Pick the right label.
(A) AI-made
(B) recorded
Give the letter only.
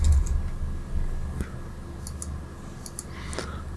B